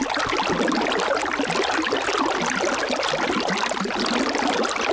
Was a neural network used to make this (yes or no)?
no